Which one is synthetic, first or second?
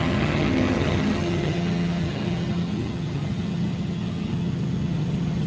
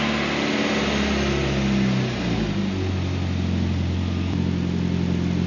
first